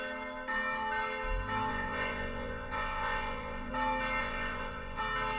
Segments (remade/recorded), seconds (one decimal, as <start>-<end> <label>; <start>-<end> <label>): 0.0-1.7 recorded; 1.7-3.7 remade; 3.7-4.2 recorded; 4.2-5.0 remade; 5.0-5.4 recorded